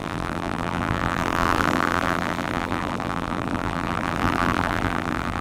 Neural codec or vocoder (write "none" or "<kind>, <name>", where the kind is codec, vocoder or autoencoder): vocoder, BigVGAN v2